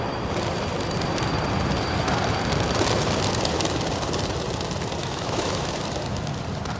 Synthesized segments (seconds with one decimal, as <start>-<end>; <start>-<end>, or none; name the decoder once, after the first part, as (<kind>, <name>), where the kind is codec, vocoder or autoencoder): 5.0-5.8 (autoencoder, DAC-VAE)